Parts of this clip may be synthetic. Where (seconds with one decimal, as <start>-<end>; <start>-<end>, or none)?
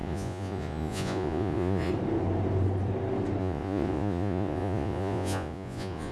0.0-1.9; 3.4-6.1